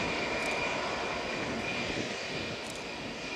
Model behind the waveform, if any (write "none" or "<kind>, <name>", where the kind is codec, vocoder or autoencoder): none